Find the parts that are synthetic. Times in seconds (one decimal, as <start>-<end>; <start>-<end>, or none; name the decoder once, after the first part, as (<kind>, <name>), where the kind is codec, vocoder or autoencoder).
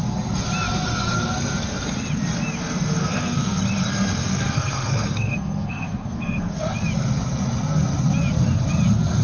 3.0-3.6 (codec, SNAC); 4.2-6.6